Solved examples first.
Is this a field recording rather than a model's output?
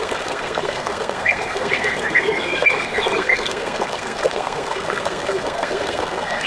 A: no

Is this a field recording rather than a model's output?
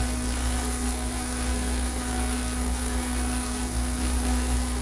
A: no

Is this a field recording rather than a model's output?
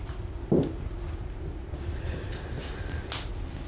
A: yes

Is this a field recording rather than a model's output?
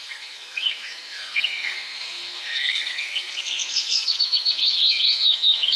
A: no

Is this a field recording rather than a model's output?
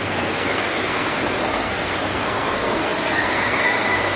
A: no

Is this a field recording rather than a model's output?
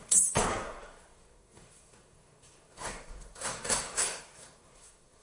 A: no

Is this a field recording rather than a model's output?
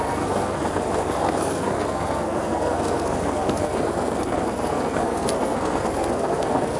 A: no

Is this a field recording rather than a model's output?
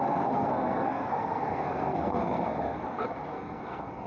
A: no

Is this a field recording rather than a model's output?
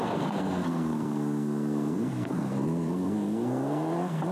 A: no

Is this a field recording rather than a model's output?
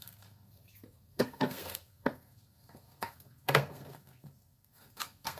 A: no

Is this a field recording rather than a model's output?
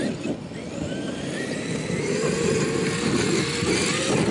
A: yes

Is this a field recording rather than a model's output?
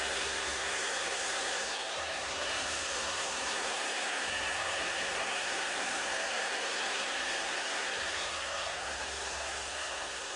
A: no